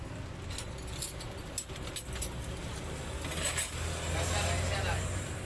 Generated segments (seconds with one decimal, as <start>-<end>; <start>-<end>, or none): none